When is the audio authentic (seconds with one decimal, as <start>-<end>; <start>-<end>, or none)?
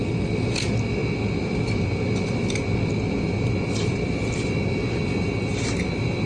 0.0-6.3